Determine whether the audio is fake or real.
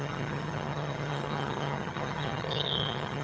fake